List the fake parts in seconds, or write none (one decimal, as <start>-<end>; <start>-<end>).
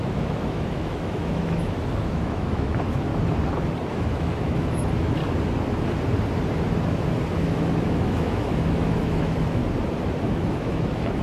0.0-3.1; 3.9-5.2; 7.4-9.6; 10.2-11.2